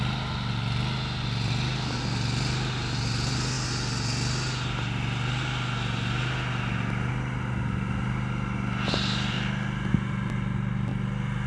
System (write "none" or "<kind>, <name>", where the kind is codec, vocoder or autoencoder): none